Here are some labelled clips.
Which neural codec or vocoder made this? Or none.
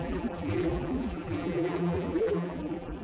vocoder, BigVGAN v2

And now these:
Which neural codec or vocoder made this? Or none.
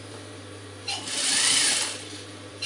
vocoder, BigVGAN v2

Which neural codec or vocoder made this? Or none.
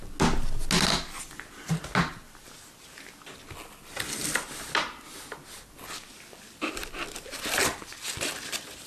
none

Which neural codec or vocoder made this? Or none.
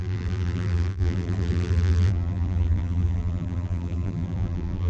vocoder, BigVGAN v2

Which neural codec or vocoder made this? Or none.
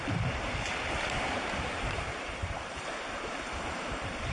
vocoder, BigVGAN v2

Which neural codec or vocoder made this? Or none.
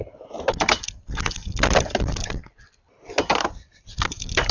vocoder, BigVGAN v2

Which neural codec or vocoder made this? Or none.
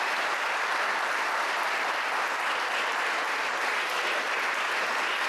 none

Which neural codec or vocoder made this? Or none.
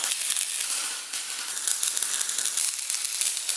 none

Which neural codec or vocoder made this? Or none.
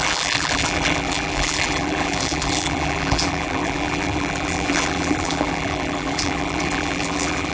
vocoder, BigVGAN v2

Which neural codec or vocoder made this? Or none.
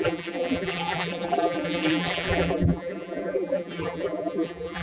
vocoder, BigVGAN v2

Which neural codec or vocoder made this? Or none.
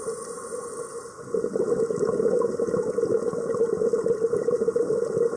none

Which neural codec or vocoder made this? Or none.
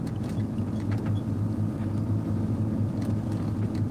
none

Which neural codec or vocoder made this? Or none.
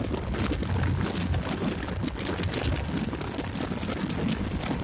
none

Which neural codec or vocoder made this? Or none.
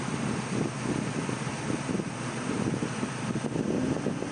none